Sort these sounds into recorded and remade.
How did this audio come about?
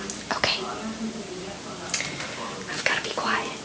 recorded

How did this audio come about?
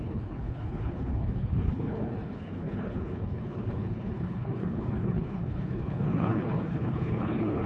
remade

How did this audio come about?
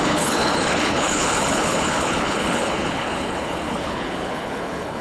remade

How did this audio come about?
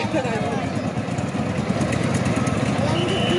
recorded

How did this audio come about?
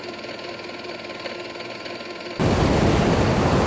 recorded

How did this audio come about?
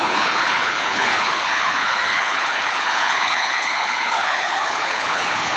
remade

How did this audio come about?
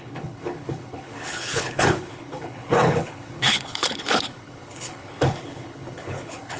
remade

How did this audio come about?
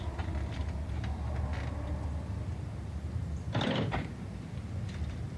recorded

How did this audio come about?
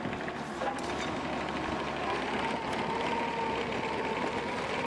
recorded